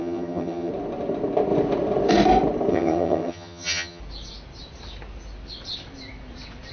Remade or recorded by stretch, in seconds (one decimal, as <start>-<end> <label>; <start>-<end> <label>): 0.0-0.7 remade; 0.7-2.7 recorded; 2.7-4.0 remade; 4.0-6.7 recorded